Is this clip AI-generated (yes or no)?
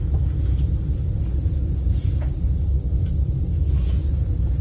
no